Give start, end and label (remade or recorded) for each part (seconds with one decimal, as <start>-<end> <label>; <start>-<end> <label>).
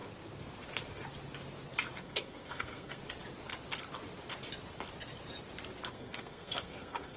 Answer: 0.0-2.0 recorded; 2.0-3.0 remade; 3.0-5.9 recorded; 5.9-7.2 remade